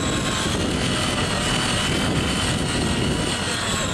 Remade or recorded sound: recorded